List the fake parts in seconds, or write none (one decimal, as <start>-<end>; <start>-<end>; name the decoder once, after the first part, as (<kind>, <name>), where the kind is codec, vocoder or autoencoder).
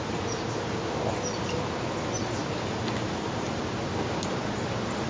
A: none